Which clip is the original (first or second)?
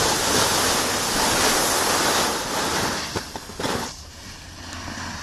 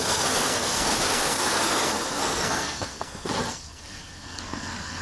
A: first